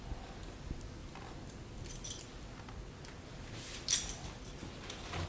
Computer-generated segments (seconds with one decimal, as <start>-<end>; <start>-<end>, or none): none